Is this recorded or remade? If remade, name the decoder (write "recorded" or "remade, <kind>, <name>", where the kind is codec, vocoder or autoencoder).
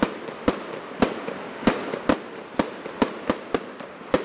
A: recorded